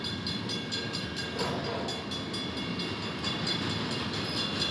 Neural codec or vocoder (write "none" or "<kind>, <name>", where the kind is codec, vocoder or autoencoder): none